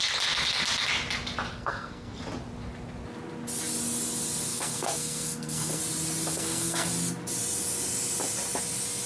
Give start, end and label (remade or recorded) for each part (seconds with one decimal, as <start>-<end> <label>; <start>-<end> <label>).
0.0-1.5 recorded; 1.5-2.2 remade; 2.2-4.5 recorded; 4.5-5.8 remade; 5.8-6.3 recorded; 6.3-6.9 remade; 6.9-9.1 recorded